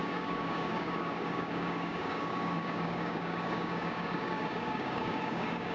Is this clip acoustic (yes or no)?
no